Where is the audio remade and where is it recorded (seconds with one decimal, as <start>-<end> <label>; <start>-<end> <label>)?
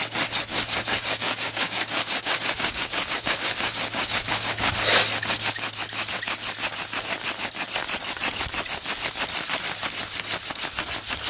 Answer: 0.0-0.5 recorded; 0.5-4.7 remade; 4.7-11.3 recorded